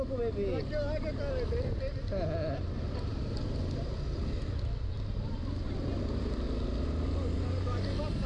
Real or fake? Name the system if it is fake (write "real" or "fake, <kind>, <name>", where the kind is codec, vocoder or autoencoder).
real